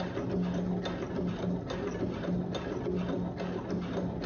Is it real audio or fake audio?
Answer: real